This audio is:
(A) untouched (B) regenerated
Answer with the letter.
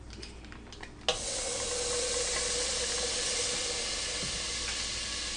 A